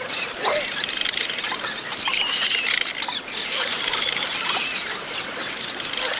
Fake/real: real